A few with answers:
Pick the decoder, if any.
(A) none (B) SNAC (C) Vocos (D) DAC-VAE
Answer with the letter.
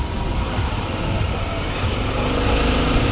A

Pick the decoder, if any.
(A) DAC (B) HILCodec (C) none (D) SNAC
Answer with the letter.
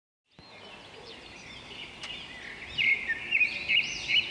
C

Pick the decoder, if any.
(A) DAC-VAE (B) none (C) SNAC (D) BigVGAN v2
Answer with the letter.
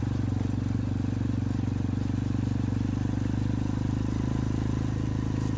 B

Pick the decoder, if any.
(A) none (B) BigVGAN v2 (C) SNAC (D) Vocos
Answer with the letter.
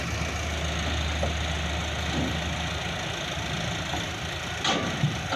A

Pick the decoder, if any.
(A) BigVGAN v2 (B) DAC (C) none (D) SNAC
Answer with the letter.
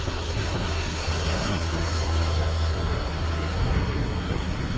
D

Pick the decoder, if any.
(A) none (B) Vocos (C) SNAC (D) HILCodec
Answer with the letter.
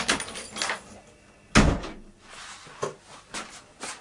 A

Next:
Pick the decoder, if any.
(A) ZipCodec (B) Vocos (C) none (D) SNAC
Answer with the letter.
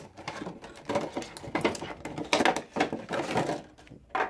C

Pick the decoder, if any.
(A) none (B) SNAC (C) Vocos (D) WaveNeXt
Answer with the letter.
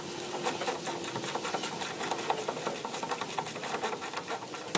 A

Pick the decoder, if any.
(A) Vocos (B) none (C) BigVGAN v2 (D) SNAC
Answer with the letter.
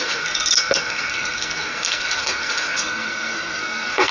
D